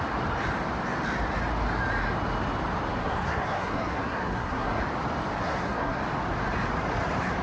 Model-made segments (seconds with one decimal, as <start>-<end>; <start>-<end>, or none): 3.0-4.8; 5.4-6.0